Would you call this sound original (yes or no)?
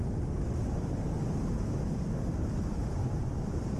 yes